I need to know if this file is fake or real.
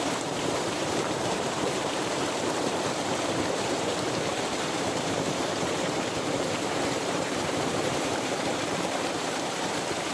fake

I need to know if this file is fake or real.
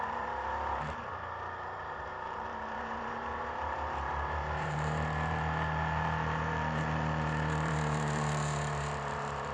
fake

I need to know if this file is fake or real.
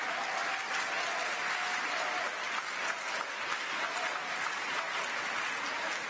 real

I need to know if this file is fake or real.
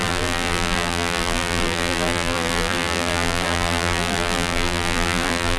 fake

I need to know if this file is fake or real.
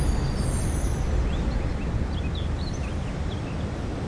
real